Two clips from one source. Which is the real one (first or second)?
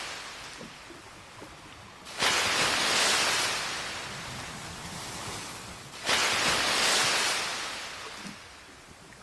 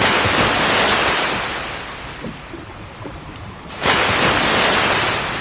first